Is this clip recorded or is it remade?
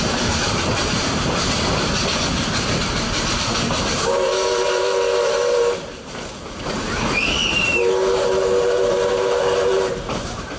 remade